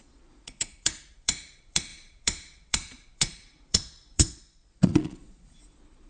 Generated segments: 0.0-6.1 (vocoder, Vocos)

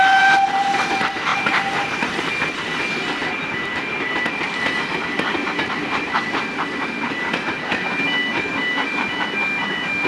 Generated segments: 1.3-2.3 (vocoder, BigVGAN v2); 8.6-9.2